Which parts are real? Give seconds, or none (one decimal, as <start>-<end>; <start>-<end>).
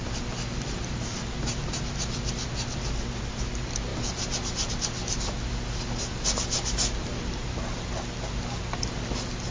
0.0-9.5